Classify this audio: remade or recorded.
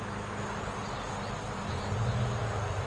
recorded